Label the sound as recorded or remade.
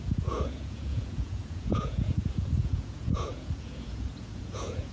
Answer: remade